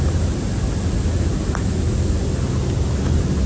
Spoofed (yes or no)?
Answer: no